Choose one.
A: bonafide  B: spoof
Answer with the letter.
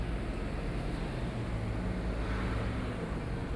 A